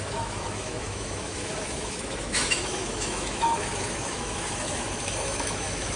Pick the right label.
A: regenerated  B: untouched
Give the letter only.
A